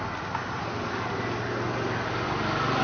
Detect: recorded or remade recorded